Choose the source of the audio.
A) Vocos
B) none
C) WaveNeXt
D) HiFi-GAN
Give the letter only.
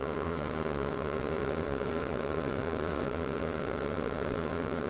C